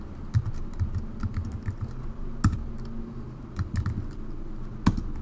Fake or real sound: real